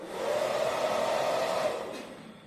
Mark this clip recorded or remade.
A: recorded